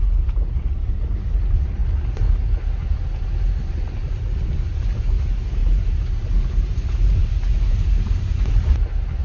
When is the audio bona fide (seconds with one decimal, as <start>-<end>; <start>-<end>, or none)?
0.0-9.2